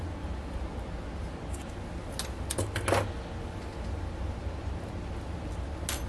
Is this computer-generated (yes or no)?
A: no